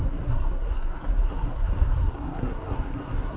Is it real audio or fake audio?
fake